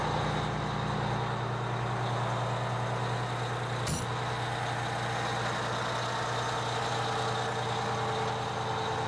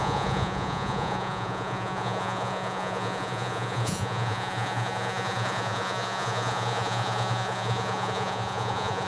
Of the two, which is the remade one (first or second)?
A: second